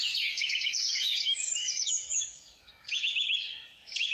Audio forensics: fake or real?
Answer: fake